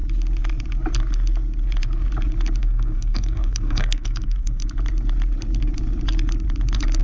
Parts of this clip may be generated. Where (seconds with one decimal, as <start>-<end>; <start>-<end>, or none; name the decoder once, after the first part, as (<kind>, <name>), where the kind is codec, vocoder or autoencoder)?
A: 2.6-4.6 (codec, SNAC)

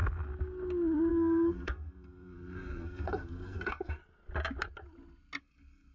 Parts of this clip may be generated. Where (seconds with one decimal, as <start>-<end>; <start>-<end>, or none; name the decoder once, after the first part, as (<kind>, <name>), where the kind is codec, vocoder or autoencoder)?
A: 1.1-4.0 (codec, SNAC); 5.4-5.9

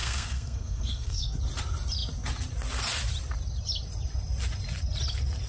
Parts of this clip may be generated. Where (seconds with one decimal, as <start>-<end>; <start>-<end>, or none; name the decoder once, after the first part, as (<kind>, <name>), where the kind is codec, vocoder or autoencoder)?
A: 0.0-1.4 (codec, SNAC)

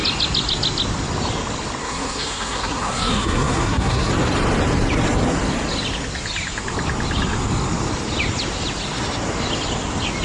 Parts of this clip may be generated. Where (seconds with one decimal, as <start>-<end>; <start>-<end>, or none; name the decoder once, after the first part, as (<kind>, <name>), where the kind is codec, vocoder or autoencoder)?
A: 1.8-4.1 (codec, SNAC)